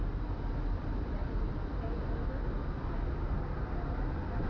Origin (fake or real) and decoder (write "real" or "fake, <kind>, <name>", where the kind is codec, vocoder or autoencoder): real